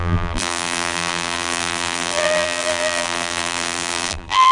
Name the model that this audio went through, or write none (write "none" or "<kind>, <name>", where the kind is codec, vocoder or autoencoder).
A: vocoder, BigVGAN v2